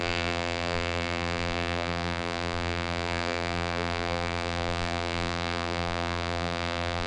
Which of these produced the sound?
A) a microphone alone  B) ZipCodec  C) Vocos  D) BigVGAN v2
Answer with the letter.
D